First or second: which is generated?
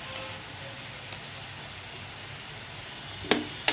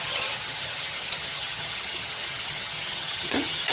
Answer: second